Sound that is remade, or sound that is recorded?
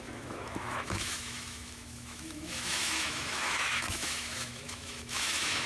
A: remade